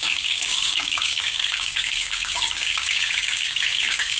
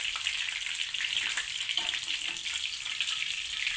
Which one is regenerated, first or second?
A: first